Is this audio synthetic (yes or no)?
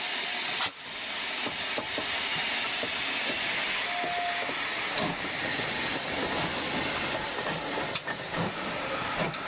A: no